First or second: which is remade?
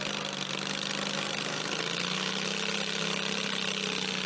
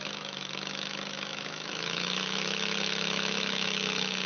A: second